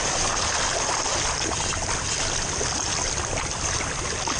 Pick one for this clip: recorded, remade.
recorded